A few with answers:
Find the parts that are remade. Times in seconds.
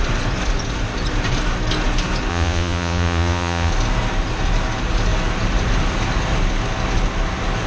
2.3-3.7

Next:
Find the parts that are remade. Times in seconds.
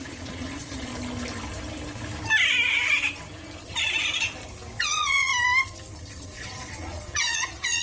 0.0-0.9; 4.8-5.3; 6.0-7.8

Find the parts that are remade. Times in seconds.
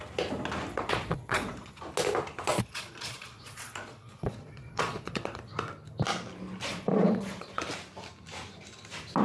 0.7-1.8; 2.5-5.5; 6.7-7.6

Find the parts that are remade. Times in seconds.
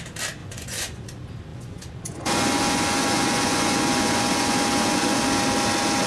0.4-1.0; 1.5-5.2